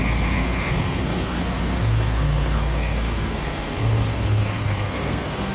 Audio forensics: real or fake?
fake